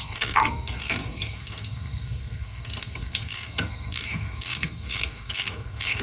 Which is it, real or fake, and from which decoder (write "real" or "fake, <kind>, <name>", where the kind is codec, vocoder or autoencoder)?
fake, codec, SNAC